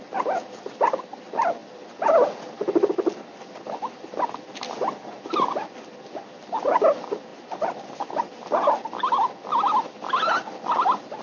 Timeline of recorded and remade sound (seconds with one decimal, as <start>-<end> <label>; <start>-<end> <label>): 0.0-7.3 recorded; 7.3-7.8 remade; 7.8-11.2 recorded